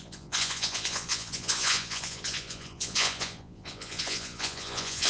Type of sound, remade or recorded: remade